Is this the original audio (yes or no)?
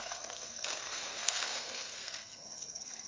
no